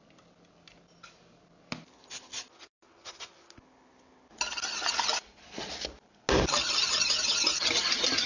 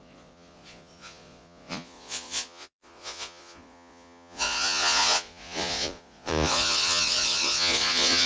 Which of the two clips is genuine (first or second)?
first